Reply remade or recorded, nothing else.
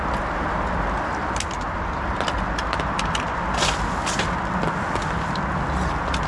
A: recorded